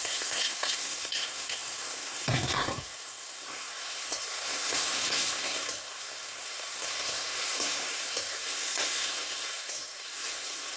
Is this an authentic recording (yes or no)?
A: no